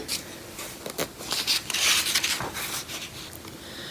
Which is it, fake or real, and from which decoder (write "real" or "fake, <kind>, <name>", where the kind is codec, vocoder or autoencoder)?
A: real